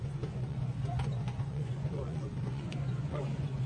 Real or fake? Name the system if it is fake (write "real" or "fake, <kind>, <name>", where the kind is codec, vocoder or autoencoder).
fake, vocoder, Vocos